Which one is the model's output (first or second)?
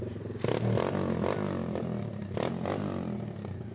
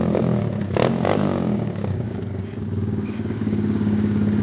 second